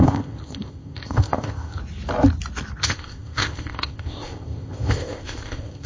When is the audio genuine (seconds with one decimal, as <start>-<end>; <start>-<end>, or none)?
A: 1.8-2.8